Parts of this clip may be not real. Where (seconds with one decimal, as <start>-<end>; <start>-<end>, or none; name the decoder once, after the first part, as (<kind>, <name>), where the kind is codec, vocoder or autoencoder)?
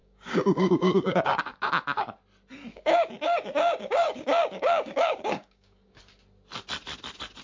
0.0-1.4 (codec, DAC); 2.7-6.0